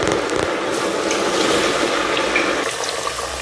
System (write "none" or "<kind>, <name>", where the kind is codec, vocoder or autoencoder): none